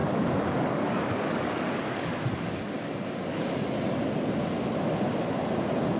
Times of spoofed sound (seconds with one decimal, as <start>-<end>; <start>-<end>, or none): 0.0-3.6